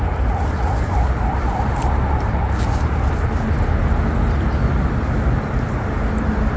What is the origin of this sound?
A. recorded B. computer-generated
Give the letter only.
A